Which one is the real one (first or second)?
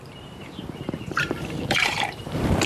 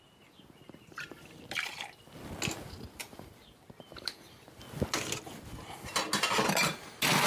second